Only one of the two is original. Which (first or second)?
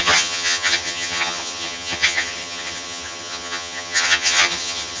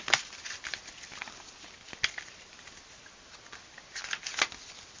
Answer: second